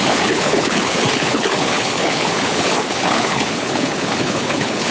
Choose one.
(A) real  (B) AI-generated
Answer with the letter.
B